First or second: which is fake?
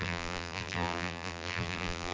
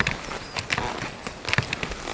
first